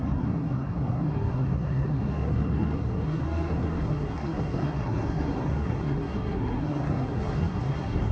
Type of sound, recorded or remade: remade